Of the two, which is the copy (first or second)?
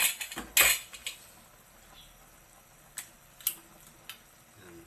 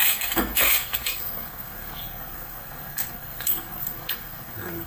second